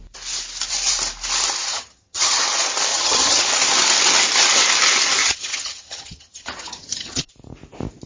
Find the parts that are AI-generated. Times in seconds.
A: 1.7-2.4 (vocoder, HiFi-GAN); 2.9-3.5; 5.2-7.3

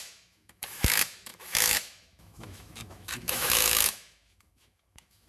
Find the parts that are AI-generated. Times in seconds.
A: 0.0-5.3 (autoencoder, DAC-VAE)

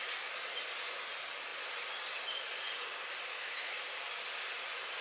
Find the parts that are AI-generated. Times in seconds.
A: 3.3-3.8 (autoencoder, DAC-VAE)

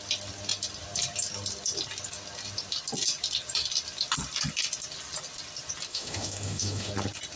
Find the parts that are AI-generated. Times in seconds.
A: 5.9-6.9 (autoencoder, DAC-VAE)

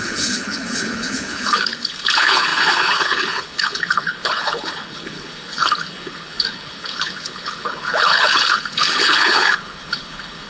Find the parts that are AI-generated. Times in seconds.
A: 0.0-10.5 (codec, HILCodec)

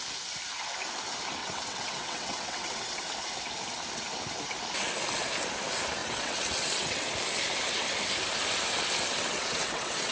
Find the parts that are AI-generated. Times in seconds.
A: 1.4-3.0 (vocoder, WaveNeXt); 6.0-7.1; 9.1-10.1

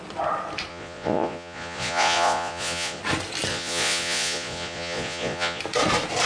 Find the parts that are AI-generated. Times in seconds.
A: 0.7-3.0 (vocoder, Vocos); 3.5-5.6